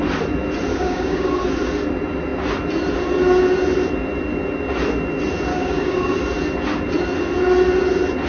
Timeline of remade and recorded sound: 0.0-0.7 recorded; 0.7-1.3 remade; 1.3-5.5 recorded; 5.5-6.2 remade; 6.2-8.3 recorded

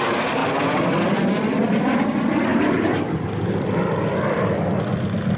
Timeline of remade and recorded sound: 0.0-0.4 remade; 0.4-1.1 recorded; 1.1-2.5 remade; 2.5-5.4 recorded

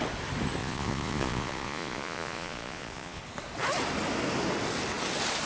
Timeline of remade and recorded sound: 0.0-0.6 recorded; 0.6-3.2 remade; 3.2-5.5 recorded